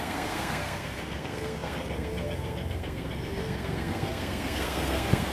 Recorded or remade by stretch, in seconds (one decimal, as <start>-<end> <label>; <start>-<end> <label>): 0.0-5.3 remade